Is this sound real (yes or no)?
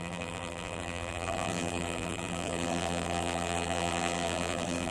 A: no